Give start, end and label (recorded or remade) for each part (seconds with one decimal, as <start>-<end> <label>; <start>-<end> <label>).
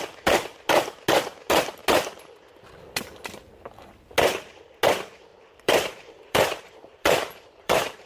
0.0-5.3 recorded; 5.3-8.1 remade